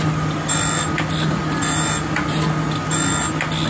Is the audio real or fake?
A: real